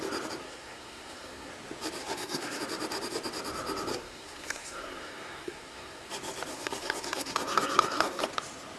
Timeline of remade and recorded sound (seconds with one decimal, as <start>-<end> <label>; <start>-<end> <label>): 0.0-0.4 recorded; 0.4-1.5 remade; 1.5-2.0 recorded; 2.0-2.6 remade; 2.6-3.9 recorded; 3.9-6.1 remade; 6.1-6.5 recorded; 6.5-8.2 remade; 8.2-8.8 recorded